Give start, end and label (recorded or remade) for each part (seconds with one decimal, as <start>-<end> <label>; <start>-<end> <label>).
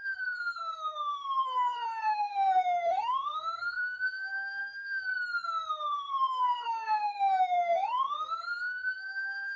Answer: 0.0-5.1 remade; 5.1-5.7 recorded; 5.7-9.6 remade